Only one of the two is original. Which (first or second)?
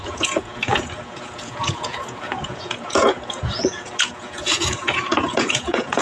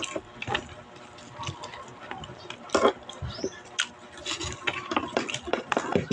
second